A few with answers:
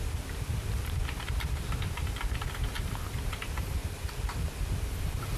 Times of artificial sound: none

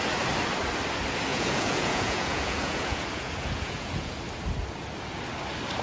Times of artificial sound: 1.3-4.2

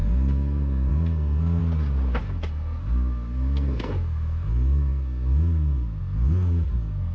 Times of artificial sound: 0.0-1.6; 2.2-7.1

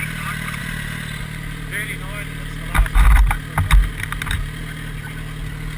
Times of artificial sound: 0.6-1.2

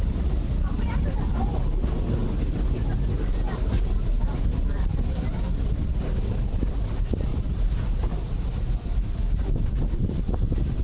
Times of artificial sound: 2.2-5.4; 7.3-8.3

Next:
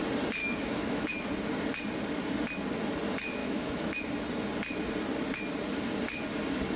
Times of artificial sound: 0.4-1.3; 3.4-4.1